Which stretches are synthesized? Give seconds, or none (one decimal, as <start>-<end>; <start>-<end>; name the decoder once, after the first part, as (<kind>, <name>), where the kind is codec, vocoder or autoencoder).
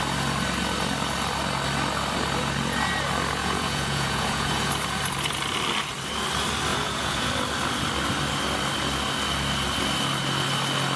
3.4-4.7 (vocoder, Vocos); 6.7-7.3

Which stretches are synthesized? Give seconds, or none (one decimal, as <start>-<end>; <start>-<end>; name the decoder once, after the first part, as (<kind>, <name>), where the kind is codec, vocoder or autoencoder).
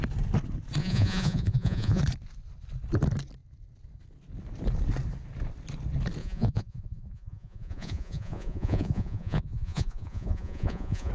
0.8-2.0 (vocoder, Vocos); 6.2-11.1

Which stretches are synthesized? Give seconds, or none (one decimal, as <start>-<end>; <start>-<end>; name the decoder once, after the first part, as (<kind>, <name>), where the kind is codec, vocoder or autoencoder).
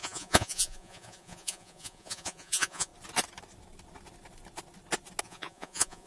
0.0-2.9 (vocoder, Vocos); 5.2-6.1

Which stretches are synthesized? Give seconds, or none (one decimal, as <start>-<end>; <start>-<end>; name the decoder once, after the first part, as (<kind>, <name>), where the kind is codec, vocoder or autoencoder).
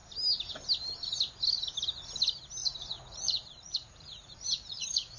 2.6-5.2 (vocoder, Vocos)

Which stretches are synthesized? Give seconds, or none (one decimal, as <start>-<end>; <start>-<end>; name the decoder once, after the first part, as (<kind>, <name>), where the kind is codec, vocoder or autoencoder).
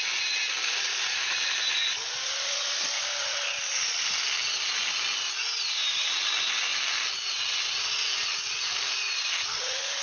none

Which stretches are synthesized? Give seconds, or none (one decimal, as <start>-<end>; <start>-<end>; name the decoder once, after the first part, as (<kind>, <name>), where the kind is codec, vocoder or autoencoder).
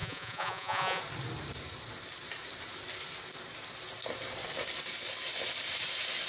0.0-1.0 (vocoder, Vocos)